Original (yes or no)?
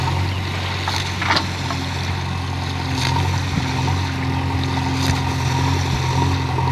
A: yes